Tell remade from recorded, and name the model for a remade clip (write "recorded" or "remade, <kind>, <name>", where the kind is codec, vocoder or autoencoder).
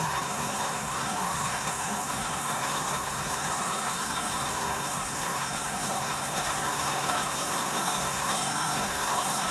remade, codec, SNAC